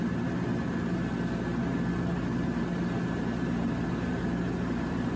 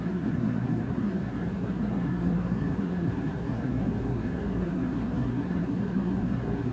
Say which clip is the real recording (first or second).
first